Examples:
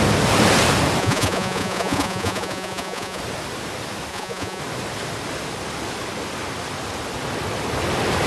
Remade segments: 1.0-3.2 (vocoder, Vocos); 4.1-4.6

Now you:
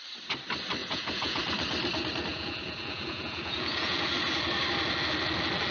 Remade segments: 0.8-1.4 (vocoder, Vocos); 2.3-4.1

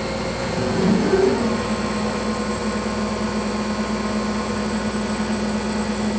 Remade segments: 0.4-1.3 (vocoder, Vocos)

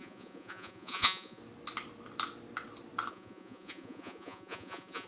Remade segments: 0.0-1.4 (vocoder, Vocos); 3.1-5.1

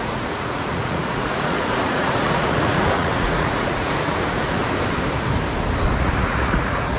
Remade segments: 0.0-4.6 (vocoder, Vocos); 6.0-7.0